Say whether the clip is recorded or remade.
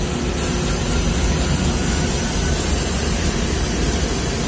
recorded